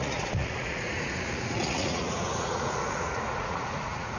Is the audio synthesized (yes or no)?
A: yes